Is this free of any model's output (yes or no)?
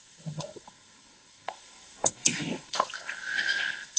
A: no